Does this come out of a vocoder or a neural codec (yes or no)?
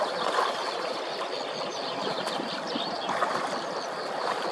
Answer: no